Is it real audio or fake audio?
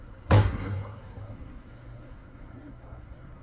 fake